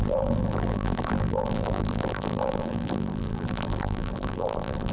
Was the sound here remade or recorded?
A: remade